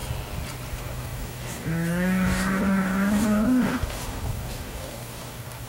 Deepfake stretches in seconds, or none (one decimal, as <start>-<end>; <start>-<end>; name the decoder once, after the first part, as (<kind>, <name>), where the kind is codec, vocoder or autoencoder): 0.7-5.7 (codec, DAC)